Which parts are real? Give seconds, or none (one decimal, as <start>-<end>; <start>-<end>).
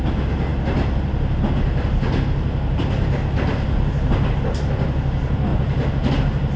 0.0-6.6